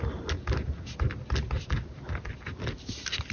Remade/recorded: recorded